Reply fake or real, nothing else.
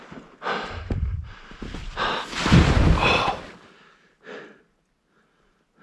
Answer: real